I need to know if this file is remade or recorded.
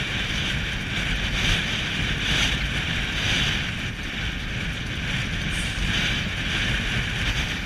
recorded